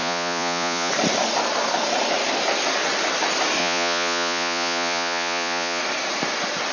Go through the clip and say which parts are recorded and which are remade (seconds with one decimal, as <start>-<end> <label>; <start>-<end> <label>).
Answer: 0.0-0.9 remade; 0.9-3.6 recorded; 3.6-5.8 remade; 5.8-6.7 recorded